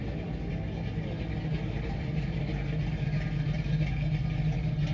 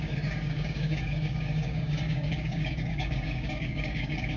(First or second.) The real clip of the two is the first